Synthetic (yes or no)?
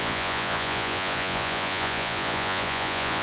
yes